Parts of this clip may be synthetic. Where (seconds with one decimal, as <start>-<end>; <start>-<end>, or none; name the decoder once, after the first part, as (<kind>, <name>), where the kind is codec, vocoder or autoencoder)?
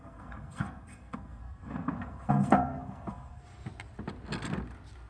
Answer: 0.0-3.4 (codec, SNAC)